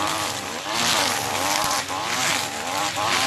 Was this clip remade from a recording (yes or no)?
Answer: no